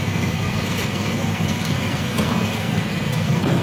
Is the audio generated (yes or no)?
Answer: yes